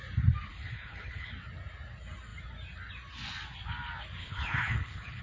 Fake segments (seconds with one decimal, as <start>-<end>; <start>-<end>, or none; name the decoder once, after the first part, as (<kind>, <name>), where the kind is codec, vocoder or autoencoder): 0.5-1.3 (codec, HILCodec); 4.2-5.2